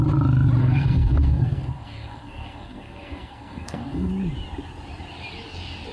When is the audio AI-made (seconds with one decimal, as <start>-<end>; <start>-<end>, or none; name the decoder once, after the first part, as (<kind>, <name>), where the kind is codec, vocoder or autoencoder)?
0.6-4.1 (codec, SNAC)